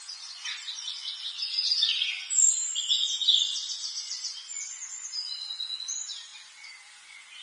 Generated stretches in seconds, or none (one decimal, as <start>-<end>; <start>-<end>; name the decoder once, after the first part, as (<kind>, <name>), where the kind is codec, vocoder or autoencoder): 0.0-6.3 (vocoder, Vocos); 6.9-7.4